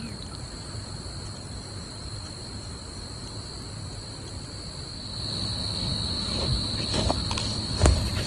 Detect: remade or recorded recorded